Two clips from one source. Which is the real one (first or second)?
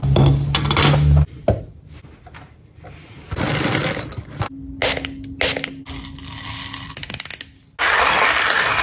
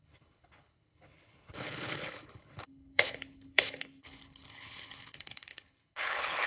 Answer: first